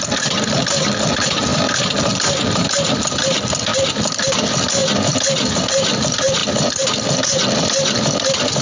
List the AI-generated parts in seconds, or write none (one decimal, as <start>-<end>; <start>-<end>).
1.5-3.2; 3.7-4.2; 6.4-7.6